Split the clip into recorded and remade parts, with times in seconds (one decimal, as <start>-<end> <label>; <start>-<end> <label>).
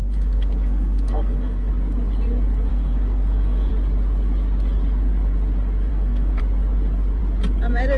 0.0-1.7 remade; 1.7-2.7 recorded; 2.7-3.7 remade; 3.7-5.9 recorded; 5.9-6.4 remade; 6.4-8.0 recorded